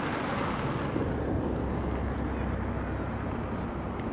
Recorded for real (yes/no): yes